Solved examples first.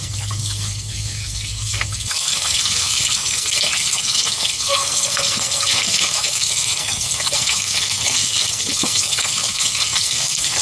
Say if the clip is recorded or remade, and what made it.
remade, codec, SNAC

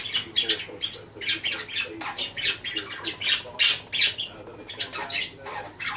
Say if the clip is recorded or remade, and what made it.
recorded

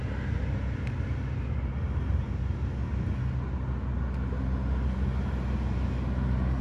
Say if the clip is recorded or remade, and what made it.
recorded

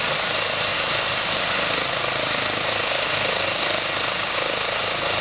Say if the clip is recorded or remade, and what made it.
recorded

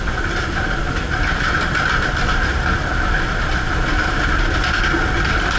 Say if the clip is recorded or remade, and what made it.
recorded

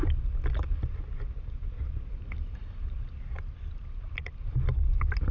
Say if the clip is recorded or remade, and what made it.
recorded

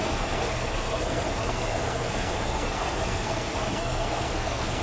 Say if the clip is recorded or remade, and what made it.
remade, codec, SNAC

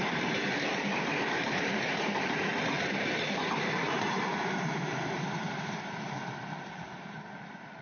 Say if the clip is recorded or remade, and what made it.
remade, vocoder, BigVGAN v2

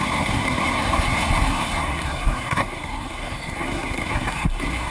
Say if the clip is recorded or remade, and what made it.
remade, codec, SNAC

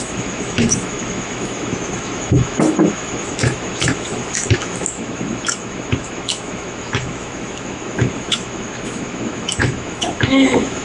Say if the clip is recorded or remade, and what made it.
remade, autoencoder, DAC-VAE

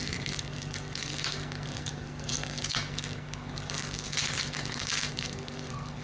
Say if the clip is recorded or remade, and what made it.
remade, codec, SNAC